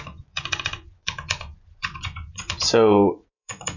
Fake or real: fake